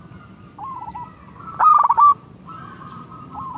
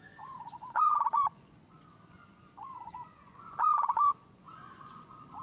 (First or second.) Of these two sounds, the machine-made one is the second